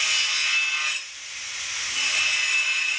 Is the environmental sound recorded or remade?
recorded